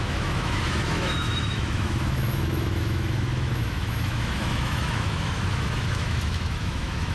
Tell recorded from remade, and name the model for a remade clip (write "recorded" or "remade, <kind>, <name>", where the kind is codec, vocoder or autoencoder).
remade, autoencoder, DAC-VAE